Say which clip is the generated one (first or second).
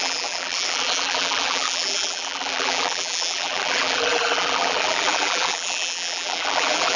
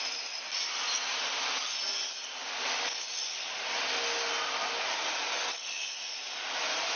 first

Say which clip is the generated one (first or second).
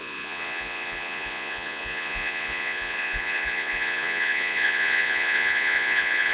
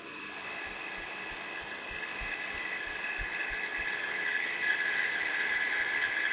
first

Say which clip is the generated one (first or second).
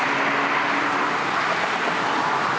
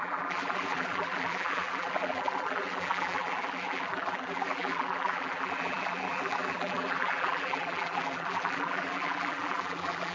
second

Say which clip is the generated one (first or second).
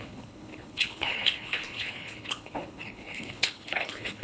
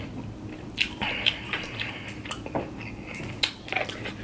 first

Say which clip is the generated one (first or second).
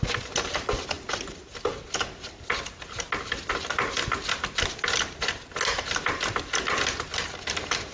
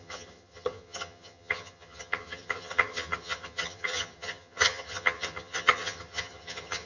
second